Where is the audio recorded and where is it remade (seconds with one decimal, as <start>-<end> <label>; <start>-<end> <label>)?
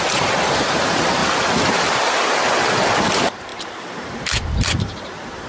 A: 0.0-1.2 remade; 1.2-3.1 recorded; 3.1-5.5 remade